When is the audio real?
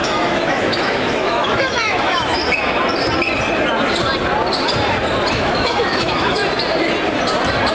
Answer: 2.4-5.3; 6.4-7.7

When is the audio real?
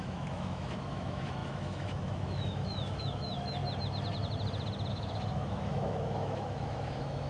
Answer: 3.6-4.9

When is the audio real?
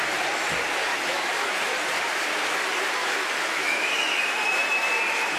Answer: 0.0-0.9; 1.6-3.0; 4.2-5.4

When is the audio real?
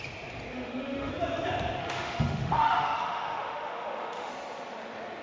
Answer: 0.0-0.5; 1.1-1.8; 4.3-5.2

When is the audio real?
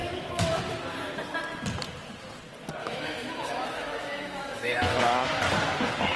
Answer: 0.6-2.8; 5.0-6.2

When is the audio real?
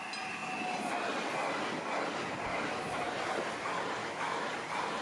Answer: 0.0-2.5; 3.1-4.0; 4.5-5.0